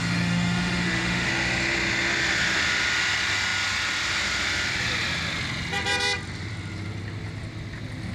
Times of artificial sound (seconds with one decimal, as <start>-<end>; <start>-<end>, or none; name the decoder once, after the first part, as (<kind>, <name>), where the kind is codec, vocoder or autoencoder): 0.0-1.3 (autoencoder, DAC-VAE)